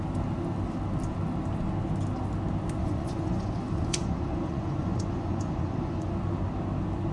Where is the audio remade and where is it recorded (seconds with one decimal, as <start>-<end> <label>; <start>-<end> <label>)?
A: 0.0-2.8 recorded; 2.8-6.1 remade; 6.1-7.1 recorded